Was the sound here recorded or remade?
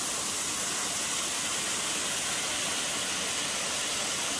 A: recorded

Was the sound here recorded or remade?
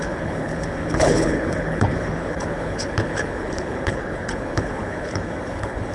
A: remade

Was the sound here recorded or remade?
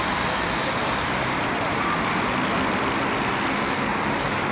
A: recorded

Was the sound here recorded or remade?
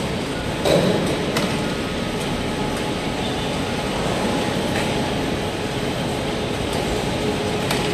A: recorded